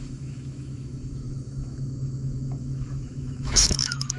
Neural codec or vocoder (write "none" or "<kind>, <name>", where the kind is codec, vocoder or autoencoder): autoencoder, DAC-VAE